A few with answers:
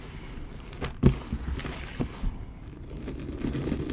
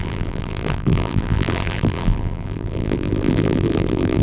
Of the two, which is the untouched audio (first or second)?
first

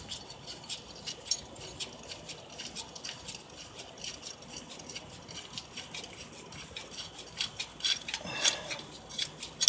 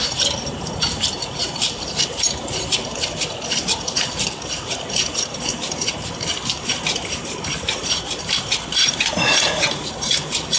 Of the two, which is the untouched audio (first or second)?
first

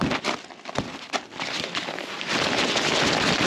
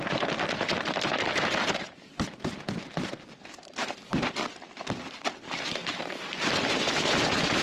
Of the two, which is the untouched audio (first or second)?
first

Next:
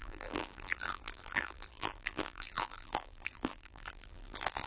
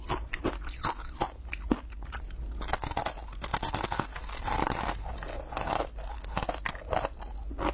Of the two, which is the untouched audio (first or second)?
second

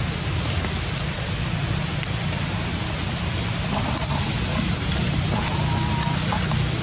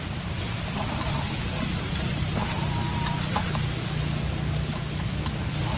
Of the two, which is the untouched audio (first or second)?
first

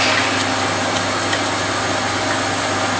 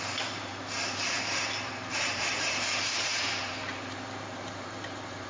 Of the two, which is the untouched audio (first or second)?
first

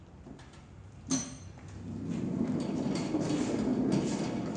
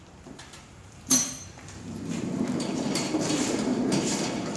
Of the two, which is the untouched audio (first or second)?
first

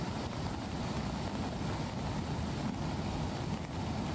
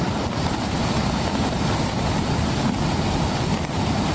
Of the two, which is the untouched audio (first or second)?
first